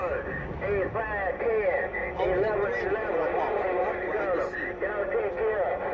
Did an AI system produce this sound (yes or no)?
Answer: no